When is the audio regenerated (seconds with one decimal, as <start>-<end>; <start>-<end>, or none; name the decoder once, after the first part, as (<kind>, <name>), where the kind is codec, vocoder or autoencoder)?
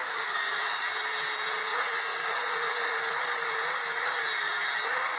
0.0-0.9 (vocoder, Vocos); 1.7-3.0